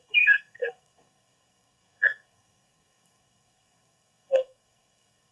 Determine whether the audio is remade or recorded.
remade